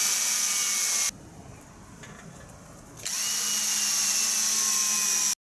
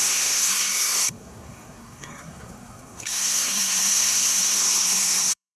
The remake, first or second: second